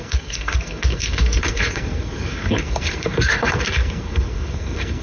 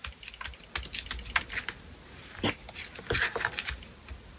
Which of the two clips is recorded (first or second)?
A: second